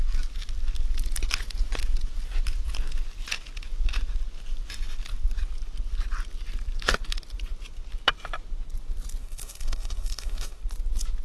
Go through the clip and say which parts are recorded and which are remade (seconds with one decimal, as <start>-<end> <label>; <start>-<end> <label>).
0.0-9.2 recorded; 9.2-10.6 remade; 10.6-11.2 recorded